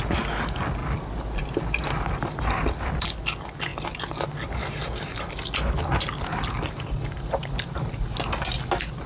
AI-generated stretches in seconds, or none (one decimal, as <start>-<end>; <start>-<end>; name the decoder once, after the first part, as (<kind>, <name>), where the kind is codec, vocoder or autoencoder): none